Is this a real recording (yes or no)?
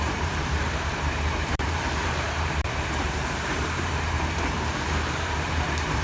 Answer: no